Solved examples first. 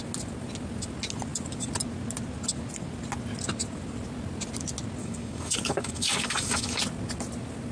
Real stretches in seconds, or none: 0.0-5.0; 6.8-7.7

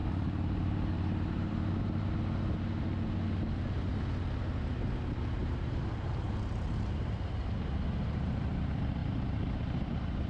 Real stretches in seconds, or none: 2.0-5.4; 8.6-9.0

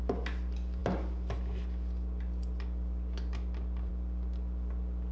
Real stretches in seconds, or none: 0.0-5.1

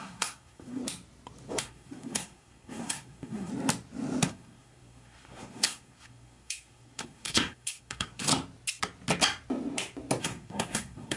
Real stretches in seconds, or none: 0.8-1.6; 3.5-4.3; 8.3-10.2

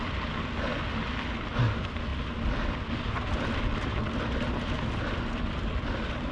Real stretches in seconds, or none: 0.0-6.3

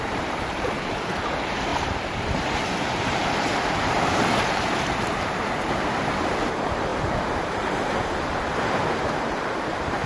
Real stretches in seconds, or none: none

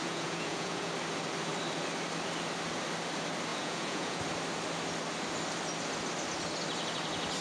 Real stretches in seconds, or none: 0.9-3.5; 4.2-7.4